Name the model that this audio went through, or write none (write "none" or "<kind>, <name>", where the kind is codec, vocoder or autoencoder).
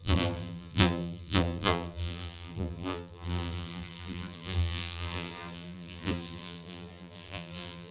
vocoder, BigVGAN v2